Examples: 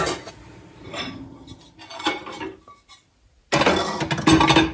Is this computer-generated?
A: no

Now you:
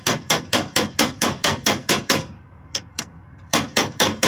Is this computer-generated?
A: yes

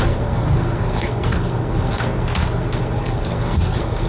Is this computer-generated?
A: yes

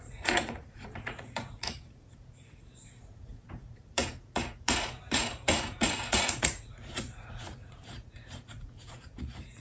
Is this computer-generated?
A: yes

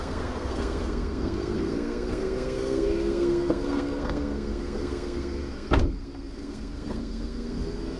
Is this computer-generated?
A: yes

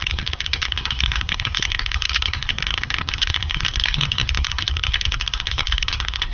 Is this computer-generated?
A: yes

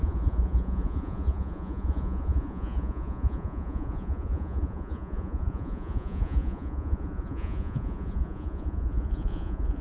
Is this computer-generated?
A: yes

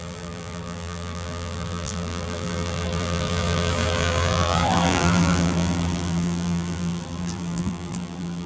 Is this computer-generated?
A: yes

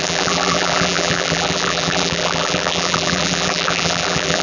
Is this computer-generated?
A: yes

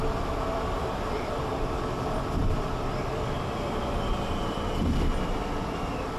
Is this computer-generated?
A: yes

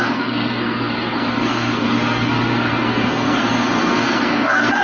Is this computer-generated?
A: yes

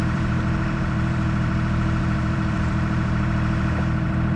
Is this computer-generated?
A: yes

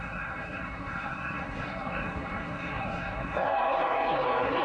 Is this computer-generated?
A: yes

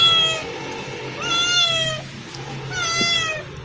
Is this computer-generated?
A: no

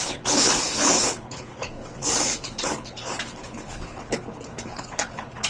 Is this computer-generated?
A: yes